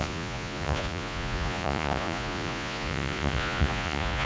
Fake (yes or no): yes